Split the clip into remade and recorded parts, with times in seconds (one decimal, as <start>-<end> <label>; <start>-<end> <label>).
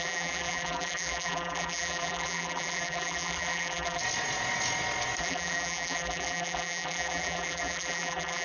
0.0-4.0 remade; 4.0-5.2 recorded; 5.2-8.4 remade